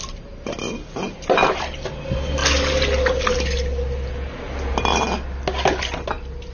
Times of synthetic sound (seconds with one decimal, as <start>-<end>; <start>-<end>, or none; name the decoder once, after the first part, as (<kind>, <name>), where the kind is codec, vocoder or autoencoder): none